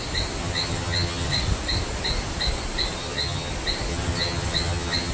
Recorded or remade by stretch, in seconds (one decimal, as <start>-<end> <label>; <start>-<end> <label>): 0.0-0.4 recorded; 0.4-1.4 remade; 1.4-3.0 recorded; 3.0-3.5 remade; 3.5-3.9 recorded; 3.9-5.1 remade